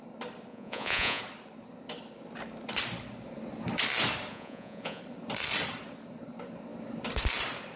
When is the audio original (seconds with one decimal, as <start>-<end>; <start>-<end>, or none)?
0.0-0.5; 1.2-4.3; 5.0-7.8